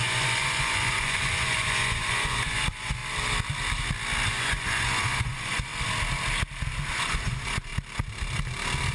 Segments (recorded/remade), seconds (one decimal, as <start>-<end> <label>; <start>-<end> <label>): 0.0-3.0 remade; 3.0-4.3 recorded; 4.3-5.7 remade; 5.7-6.9 recorded; 6.9-7.7 remade; 7.7-8.9 recorded